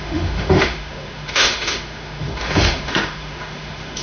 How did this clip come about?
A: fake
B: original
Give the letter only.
A